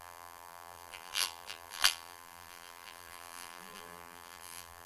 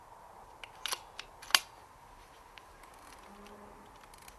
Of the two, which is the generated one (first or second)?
first